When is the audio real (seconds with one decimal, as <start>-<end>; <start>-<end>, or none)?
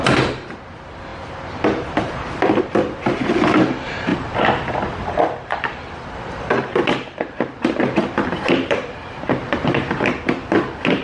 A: 0.0-1.1; 1.6-4.1; 9.2-11.0